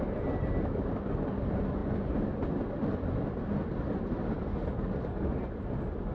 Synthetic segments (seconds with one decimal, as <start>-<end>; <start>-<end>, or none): none